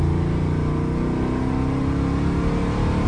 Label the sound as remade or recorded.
recorded